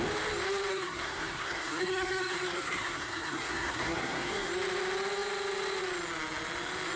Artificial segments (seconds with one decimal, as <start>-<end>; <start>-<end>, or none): 0.7-4.5